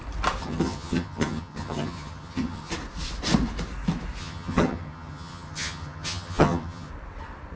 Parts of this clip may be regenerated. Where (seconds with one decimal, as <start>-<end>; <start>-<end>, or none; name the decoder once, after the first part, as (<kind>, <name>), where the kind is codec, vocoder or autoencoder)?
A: 0.4-2.7 (vocoder, HiFi-GAN); 4.2-6.9